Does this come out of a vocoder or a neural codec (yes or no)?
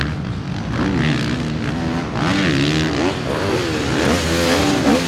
no